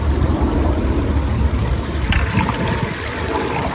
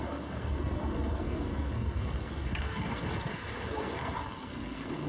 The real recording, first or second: first